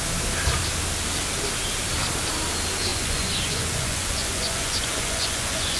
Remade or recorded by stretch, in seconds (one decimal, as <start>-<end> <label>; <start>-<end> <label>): 0.0-2.9 recorded; 2.9-5.8 remade